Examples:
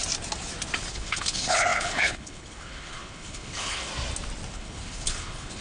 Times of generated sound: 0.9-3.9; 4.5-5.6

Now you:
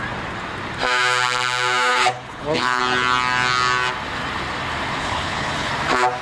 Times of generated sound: 1.9-2.8; 5.0-5.7

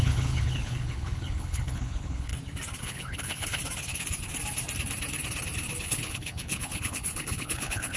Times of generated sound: 0.0-2.3; 2.8-3.6; 5.8-8.0